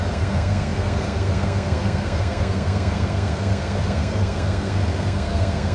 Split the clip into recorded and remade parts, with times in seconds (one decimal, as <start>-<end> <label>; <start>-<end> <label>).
0.0-5.7 remade